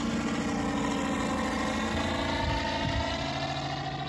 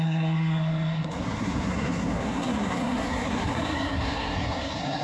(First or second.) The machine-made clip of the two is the second